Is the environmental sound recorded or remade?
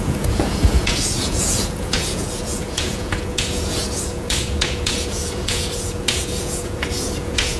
remade